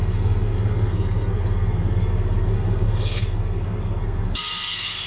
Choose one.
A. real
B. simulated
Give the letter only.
B